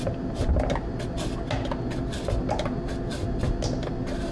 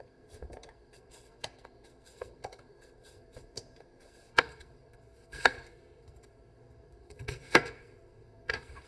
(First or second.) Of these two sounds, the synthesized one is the second